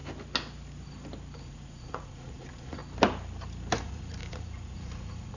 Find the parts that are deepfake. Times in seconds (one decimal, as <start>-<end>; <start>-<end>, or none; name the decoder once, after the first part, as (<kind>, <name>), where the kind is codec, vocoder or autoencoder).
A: 1.4-2.8 (vocoder, Vocos); 3.8-5.4